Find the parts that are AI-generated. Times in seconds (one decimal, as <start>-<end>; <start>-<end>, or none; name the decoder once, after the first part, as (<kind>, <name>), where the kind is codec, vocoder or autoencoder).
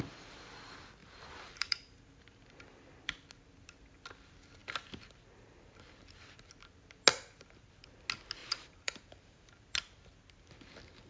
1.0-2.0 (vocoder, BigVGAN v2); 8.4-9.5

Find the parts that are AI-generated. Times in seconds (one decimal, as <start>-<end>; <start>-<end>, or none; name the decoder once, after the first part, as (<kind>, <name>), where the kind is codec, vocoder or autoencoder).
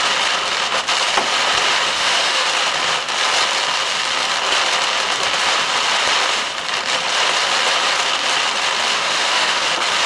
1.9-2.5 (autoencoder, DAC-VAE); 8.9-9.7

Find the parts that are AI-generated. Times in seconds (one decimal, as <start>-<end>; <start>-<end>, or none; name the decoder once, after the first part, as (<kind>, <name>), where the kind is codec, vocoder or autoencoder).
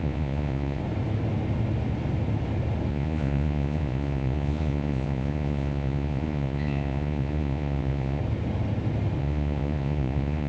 0.0-0.8 (vocoder, Vocos); 2.9-8.2; 9.2-10.5